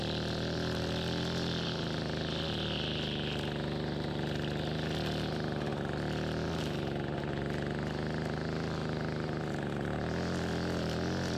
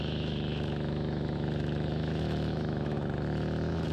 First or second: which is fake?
second